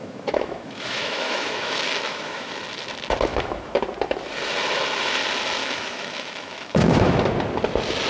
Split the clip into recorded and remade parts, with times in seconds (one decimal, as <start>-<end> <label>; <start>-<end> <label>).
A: 0.0-2.5 remade; 2.5-3.3 recorded; 3.3-3.8 remade; 3.8-5.6 recorded; 5.6-7.3 remade; 7.3-8.1 recorded